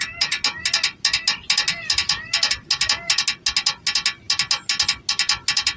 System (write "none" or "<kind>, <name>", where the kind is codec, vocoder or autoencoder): none